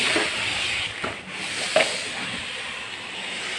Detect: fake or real real